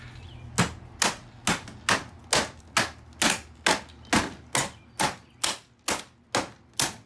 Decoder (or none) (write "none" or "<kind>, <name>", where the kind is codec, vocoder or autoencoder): none